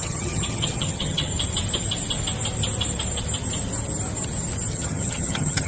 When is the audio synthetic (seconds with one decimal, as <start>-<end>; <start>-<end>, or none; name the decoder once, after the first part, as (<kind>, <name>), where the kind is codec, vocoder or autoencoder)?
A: 0.0-1.3 (vocoder, HiFi-GAN); 4.7-5.7